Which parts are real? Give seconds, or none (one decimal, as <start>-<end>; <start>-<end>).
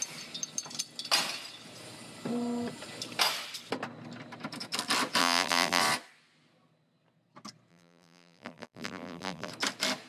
0.0-5.2; 5.8-7.7; 9.5-10.1